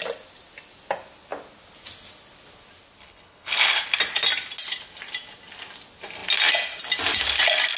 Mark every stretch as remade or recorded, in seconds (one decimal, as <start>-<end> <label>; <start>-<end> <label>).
0.0-3.0 recorded; 3.0-3.8 remade; 3.8-7.8 recorded